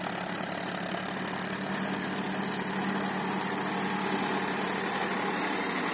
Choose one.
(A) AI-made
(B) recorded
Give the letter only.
B